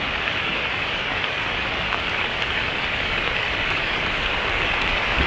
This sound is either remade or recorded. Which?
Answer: remade